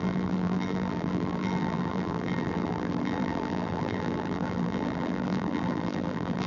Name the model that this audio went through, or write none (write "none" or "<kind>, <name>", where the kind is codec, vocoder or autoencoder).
vocoder, BigVGAN v2